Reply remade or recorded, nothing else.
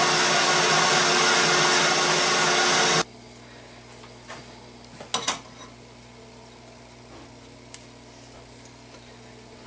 recorded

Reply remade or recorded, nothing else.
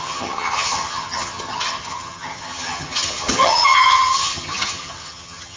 remade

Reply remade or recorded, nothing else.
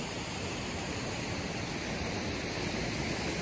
recorded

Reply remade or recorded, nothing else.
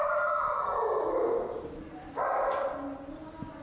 recorded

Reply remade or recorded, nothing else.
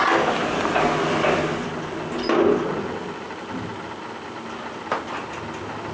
recorded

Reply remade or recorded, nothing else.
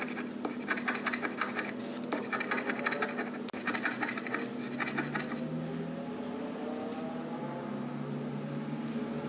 recorded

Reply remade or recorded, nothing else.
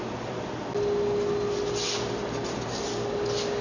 recorded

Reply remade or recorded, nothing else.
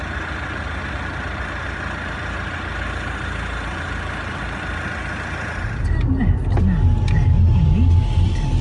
recorded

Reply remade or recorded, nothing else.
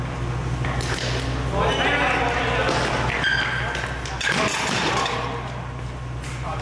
recorded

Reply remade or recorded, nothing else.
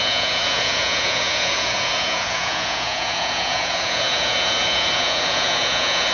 remade